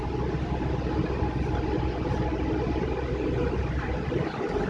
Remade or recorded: recorded